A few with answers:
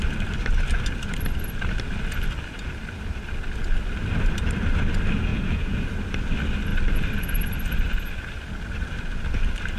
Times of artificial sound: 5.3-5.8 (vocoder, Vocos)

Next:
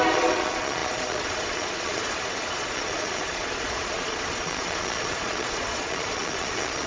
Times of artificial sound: 0.0-6.9 (vocoder, Vocos)